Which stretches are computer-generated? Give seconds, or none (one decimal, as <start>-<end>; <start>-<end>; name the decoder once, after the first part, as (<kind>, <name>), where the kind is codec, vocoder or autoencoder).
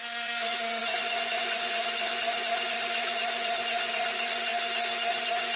0.0-4.5 (vocoder, Vocos); 5.1-5.6